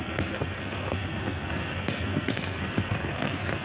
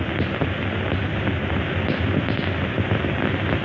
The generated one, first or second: first